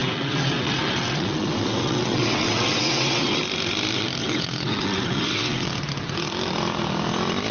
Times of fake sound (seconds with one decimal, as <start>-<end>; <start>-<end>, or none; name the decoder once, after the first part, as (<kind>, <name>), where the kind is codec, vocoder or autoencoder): 0.0-3.4 (vocoder, WaveNeXt); 4.2-5.7